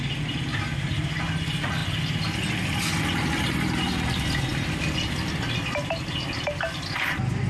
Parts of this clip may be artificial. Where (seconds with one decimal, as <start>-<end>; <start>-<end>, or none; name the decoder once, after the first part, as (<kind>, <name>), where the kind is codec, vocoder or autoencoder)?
none